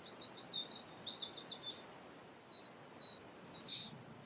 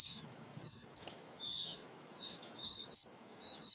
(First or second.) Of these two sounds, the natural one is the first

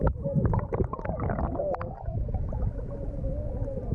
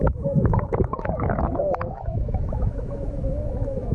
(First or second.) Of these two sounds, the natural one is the first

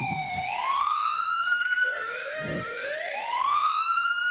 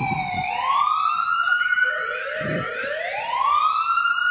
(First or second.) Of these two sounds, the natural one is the second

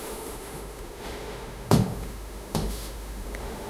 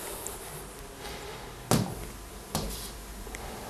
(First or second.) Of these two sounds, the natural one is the second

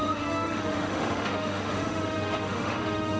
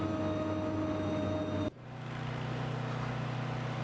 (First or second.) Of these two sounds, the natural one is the second